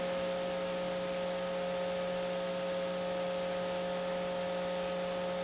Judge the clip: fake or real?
real